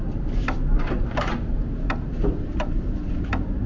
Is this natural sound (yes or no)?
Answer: no